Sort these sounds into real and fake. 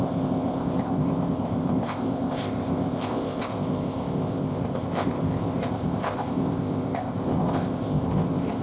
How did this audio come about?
fake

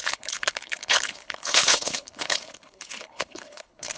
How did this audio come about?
fake